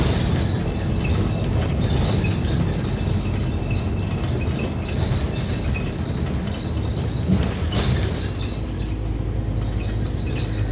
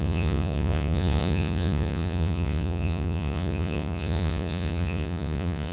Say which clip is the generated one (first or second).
second